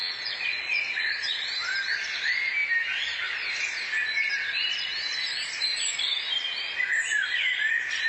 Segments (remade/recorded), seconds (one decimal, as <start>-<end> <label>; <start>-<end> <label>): 0.0-1.2 remade; 1.2-8.1 recorded

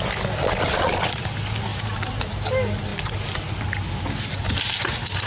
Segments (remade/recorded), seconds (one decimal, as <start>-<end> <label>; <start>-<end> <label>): 0.0-0.4 recorded; 0.4-1.2 remade; 1.2-5.3 recorded

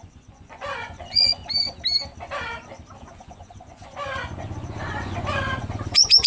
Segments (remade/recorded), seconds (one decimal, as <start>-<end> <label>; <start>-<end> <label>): 0.0-1.4 remade; 1.4-3.0 recorded; 3.0-6.3 remade

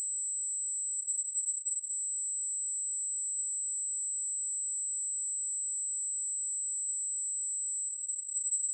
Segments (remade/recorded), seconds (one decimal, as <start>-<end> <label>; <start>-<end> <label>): 0.0-1.0 recorded; 1.0-1.9 remade; 1.9-7.9 recorded; 7.9-8.7 remade

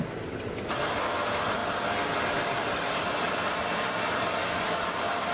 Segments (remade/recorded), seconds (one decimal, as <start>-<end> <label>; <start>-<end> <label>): 0.0-5.3 recorded

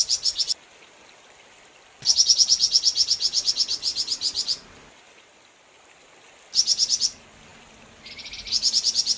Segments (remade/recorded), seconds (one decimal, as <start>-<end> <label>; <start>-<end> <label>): 0.0-9.2 recorded

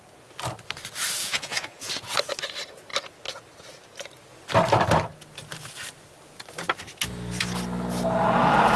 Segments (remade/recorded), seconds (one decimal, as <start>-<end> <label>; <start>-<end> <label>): 0.0-1.2 recorded; 1.2-1.9 remade; 1.9-8.8 recorded